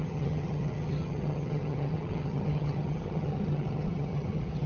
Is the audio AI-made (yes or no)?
yes